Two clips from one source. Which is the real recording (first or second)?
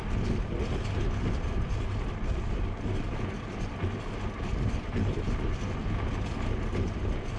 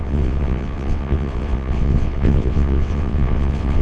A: first